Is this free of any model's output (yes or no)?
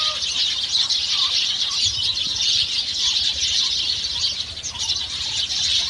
yes